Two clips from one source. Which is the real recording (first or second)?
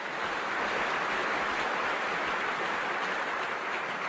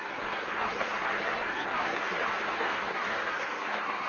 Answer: first